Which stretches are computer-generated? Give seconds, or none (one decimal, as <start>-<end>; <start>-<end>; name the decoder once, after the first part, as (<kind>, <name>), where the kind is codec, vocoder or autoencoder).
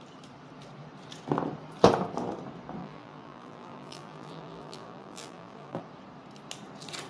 2.8-5.8 (vocoder, BigVGAN v2)